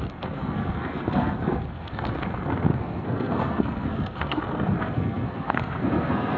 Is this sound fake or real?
fake